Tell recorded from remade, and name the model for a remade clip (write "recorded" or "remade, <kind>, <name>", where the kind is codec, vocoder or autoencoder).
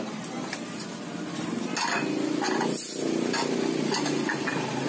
recorded